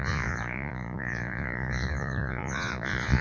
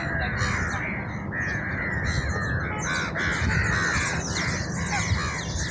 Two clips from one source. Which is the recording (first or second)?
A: second